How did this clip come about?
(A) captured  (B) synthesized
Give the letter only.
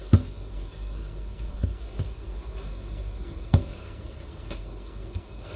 B